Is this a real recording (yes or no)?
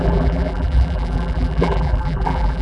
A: no